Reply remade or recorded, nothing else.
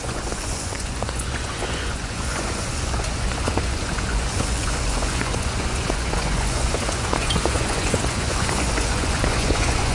remade